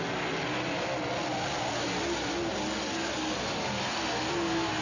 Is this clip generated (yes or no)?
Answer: no